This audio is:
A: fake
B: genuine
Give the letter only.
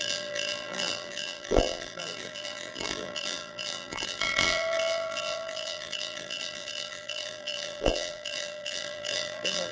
A